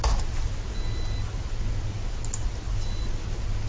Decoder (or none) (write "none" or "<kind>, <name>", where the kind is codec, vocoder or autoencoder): none